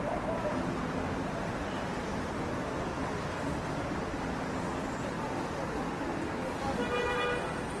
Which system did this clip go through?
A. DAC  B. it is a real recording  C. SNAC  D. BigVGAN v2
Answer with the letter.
B